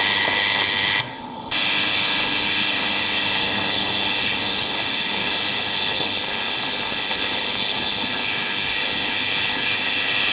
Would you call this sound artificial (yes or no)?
yes